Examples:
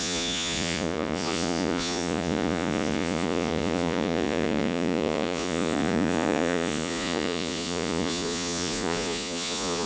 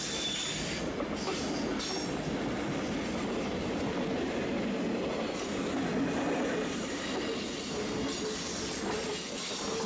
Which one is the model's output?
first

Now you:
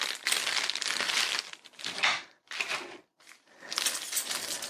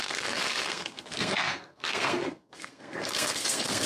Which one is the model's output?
second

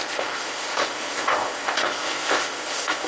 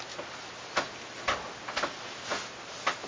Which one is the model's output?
first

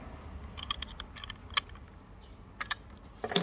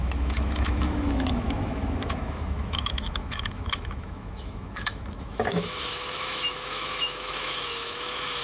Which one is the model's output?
second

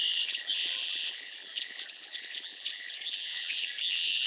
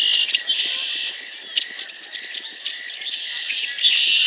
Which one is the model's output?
first